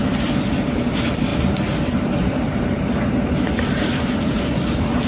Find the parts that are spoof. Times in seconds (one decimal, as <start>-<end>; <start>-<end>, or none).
none